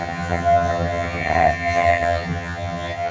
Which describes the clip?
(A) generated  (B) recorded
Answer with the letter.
A